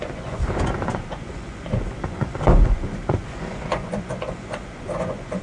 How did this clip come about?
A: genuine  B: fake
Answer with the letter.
B